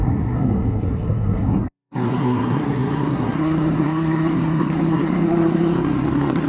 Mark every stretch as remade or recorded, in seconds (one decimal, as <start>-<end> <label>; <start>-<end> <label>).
0.0-6.5 remade